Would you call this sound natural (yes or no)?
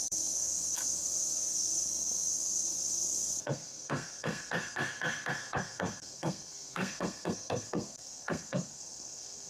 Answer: no